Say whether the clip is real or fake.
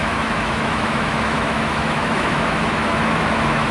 fake